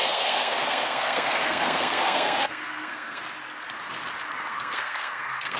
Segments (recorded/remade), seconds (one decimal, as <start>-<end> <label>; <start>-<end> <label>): 0.0-3.2 remade; 3.2-4.5 recorded; 4.5-5.6 remade